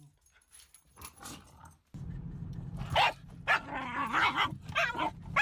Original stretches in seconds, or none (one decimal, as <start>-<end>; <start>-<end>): 0.0-5.4